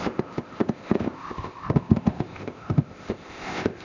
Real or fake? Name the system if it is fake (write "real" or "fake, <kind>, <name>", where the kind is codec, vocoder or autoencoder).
fake, codec, ZipCodec